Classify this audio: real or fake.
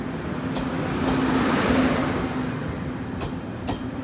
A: real